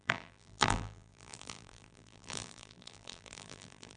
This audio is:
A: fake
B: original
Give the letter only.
A